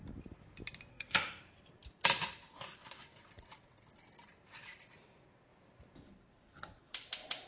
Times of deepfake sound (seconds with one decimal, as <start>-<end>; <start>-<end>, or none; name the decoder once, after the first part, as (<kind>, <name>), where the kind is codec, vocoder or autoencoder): 0.9-1.4 (codec, SNAC)